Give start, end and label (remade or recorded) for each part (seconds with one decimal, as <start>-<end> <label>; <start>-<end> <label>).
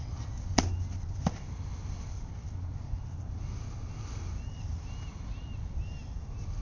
0.0-6.6 recorded